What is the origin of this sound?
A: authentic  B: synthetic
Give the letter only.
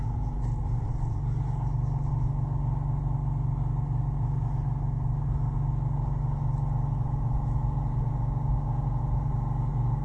A